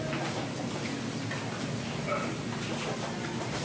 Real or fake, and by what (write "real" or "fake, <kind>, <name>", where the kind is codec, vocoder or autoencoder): real